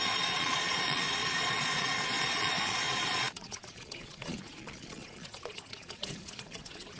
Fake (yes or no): yes